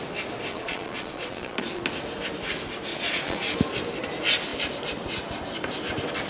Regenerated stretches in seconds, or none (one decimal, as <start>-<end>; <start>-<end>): 0.5-1.8; 2.9-3.4